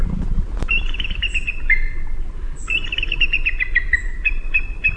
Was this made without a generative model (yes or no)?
yes